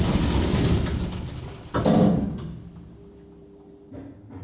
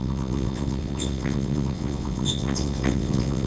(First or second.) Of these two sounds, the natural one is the first